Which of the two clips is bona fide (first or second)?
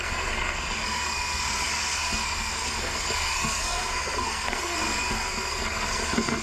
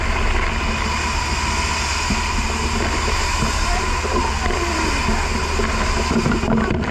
second